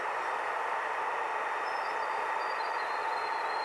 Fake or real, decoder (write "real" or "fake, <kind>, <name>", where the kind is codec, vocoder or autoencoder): real